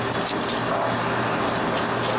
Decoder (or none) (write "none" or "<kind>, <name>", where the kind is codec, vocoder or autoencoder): none